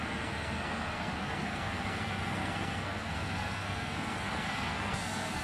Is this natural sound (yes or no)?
no